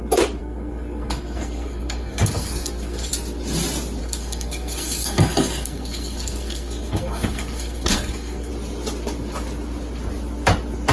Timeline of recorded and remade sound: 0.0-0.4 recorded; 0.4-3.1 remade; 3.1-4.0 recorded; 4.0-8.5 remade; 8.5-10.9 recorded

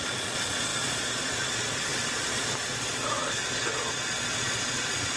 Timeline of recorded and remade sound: 0.0-5.2 remade

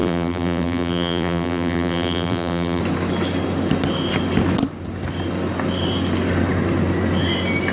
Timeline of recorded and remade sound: 0.0-2.8 remade; 2.8-7.7 recorded